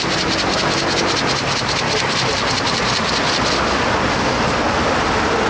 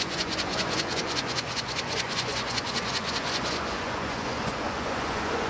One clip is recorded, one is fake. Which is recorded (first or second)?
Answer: first